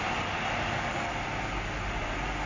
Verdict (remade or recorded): recorded